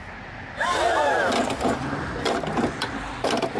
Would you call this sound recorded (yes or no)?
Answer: yes